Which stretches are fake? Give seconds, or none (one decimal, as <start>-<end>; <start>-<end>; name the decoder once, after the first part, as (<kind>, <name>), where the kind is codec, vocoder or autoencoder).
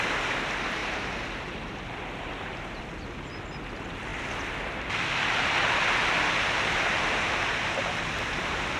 0.8-2.8 (vocoder, BigVGAN v2)